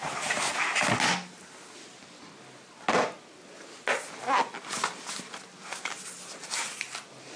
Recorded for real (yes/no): yes